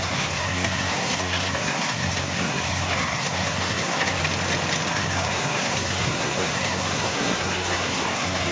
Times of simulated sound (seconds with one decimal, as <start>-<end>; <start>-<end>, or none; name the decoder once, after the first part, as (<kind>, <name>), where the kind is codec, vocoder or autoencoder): 0.0-4.2 (codec, SNAC); 4.9-8.5

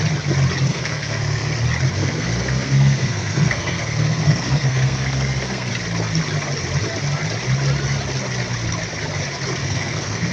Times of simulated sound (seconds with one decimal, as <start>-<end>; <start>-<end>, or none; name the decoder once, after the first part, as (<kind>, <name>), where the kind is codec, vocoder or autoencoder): 0.7-1.6 (codec, SNAC); 2.0-5.7; 9.6-10.3

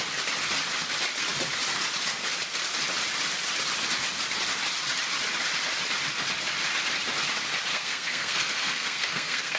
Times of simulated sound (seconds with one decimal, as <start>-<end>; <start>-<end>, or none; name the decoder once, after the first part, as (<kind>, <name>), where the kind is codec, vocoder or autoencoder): 7.7-9.6 (codec, SNAC)